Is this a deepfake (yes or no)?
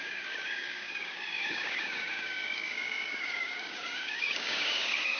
yes